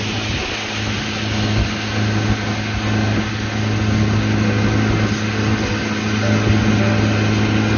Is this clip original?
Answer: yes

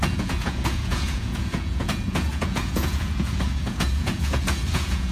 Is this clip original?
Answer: no